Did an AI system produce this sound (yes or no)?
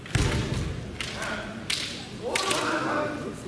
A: no